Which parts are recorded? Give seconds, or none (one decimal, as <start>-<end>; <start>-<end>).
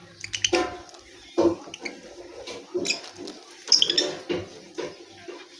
0.0-5.6